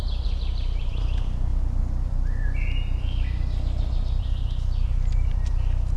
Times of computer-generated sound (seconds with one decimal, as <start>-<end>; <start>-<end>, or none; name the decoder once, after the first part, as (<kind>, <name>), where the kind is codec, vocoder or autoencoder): 0.0-1.5 (vocoder, BigVGAN v2); 5.1-6.0

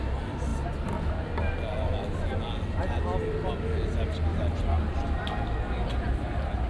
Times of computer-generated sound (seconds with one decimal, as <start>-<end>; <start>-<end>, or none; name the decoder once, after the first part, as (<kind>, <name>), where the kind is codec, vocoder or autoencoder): none

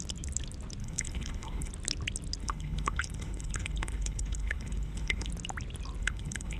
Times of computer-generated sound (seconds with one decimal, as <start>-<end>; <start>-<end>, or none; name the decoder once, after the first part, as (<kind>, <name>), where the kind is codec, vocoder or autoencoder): 0.8-1.7 (codec, HILCodec); 2.4-5.3; 6.0-6.6

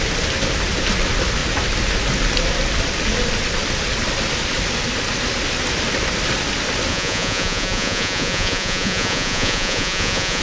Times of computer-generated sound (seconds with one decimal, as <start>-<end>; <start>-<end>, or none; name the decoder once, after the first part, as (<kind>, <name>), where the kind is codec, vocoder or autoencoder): 6.9-10.4 (vocoder, Vocos)

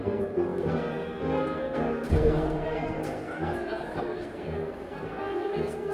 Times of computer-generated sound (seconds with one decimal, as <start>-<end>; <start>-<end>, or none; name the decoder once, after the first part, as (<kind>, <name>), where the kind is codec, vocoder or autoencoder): 0.0-5.9 (codec, SNAC)

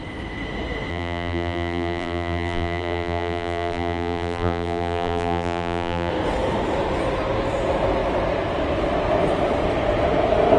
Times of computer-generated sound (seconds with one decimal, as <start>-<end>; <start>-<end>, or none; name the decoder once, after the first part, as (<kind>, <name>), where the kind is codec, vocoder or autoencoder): 0.9-6.1 (vocoder, BigVGAN v2)

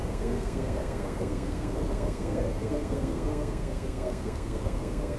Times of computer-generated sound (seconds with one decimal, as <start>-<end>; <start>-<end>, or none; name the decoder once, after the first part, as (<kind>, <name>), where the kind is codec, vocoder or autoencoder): 0.0-5.2 (codec, SNAC)